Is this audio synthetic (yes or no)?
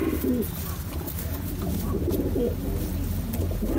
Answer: no